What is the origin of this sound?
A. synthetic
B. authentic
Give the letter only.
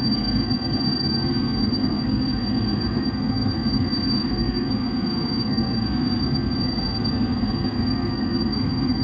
A